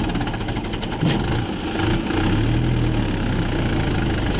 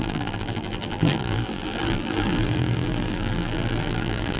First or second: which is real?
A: first